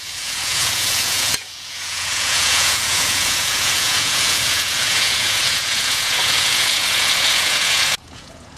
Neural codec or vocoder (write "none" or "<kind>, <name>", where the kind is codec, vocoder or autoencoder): vocoder, Vocos